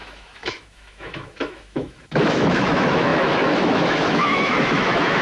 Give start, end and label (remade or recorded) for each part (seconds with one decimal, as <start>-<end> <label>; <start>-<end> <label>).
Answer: 0.0-5.2 remade